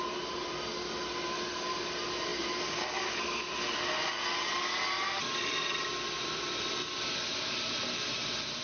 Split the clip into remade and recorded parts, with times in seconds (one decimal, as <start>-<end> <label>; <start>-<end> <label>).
0.0-8.6 recorded